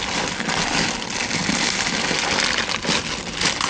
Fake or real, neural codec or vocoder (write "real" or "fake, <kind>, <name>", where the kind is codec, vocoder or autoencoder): real